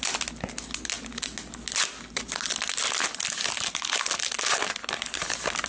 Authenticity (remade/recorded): recorded